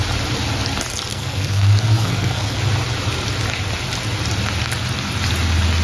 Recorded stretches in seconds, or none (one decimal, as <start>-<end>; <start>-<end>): 0.0-1.1; 2.6-5.8